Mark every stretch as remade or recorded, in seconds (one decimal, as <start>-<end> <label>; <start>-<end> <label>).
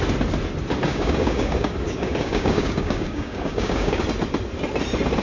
0.0-0.9 recorded; 0.9-4.0 remade; 4.0-5.2 recorded